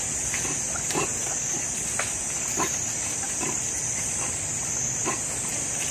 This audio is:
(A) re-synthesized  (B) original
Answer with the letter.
B